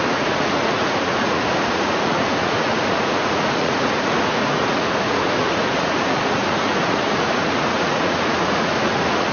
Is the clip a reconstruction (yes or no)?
yes